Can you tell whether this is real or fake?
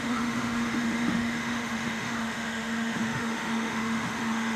fake